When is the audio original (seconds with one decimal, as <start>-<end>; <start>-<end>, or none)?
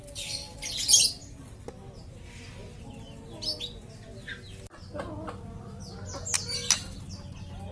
0.0-7.7